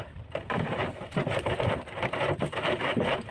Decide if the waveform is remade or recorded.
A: remade